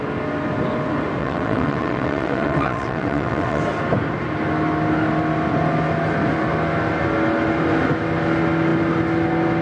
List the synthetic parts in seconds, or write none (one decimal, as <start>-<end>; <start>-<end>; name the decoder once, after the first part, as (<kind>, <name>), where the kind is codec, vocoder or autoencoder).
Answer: 1.2-3.6 (vocoder, WaveNeXt)